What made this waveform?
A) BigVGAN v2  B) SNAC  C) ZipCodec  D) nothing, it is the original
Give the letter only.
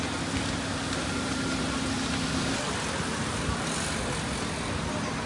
D